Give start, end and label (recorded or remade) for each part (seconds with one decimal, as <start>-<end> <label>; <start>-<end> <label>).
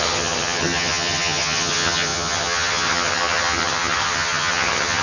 0.0-5.0 remade